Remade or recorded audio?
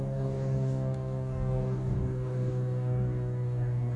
remade